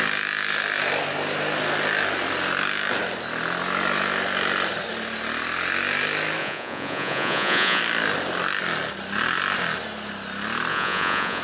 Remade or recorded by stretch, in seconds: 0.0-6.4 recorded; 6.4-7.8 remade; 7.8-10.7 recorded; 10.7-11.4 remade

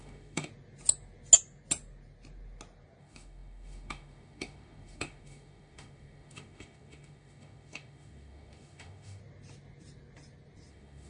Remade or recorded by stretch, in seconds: 0.0-0.5 remade; 0.5-3.0 recorded; 3.0-9.2 remade; 9.2-10.7 recorded; 10.7-11.1 remade

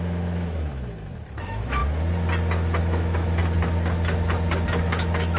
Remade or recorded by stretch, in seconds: 0.0-1.8 remade; 1.8-2.8 recorded; 2.8-3.4 remade; 3.4-4.8 recorded; 4.8-5.4 remade

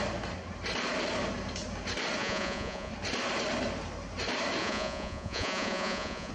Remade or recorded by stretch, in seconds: 0.0-2.2 recorded; 2.2-2.9 remade; 2.9-4.6 recorded; 4.6-6.3 remade

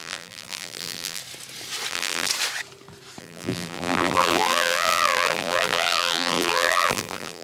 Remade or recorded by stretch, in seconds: 0.0-1.2 remade; 1.2-1.9 recorded; 1.9-2.3 remade; 2.3-3.2 recorded; 3.2-7.4 remade

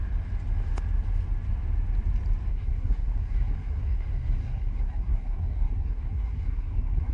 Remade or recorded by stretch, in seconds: 0.0-2.5 recorded; 2.5-7.1 remade